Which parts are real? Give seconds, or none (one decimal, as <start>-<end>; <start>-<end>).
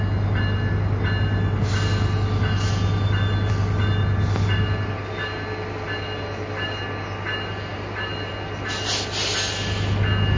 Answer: 0.0-7.7; 8.3-10.4